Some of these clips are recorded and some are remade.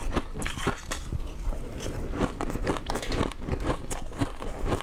remade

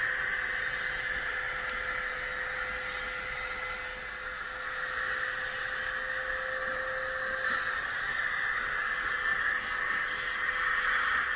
recorded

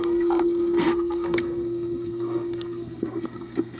remade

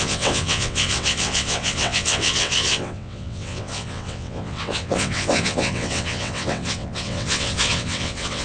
remade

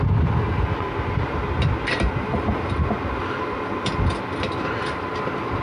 recorded